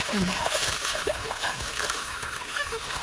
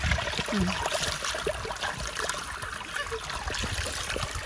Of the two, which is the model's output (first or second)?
first